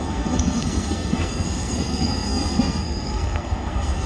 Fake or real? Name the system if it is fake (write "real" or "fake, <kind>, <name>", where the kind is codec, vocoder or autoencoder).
fake, codec, SNAC